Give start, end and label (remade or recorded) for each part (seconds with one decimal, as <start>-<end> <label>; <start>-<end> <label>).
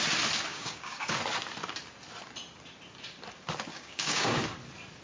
0.0-0.5 recorded; 0.5-1.2 remade; 1.2-3.7 recorded; 3.7-4.4 remade; 4.4-5.0 recorded